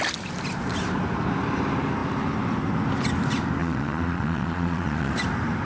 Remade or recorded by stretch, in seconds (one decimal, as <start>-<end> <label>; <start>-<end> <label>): 0.0-3.6 recorded; 3.6-5.1 remade; 5.1-5.6 recorded